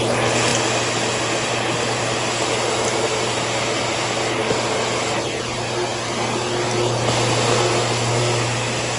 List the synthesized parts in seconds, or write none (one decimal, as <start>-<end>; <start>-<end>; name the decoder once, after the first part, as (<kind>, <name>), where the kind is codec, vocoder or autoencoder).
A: none